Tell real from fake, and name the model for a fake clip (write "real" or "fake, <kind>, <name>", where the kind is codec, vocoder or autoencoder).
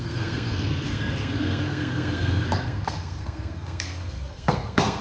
fake, codec, SNAC